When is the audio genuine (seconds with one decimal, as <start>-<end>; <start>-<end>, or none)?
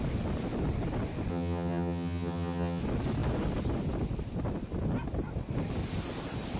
0.0-1.3; 2.8-6.6